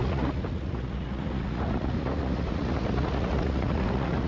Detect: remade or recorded remade